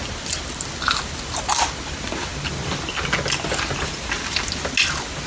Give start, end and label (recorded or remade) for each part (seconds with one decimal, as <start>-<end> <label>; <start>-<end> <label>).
0.0-5.3 recorded